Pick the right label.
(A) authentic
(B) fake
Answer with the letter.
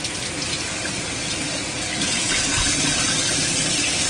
A